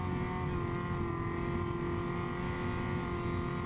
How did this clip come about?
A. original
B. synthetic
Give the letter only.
A